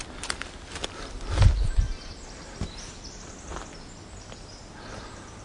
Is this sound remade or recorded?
recorded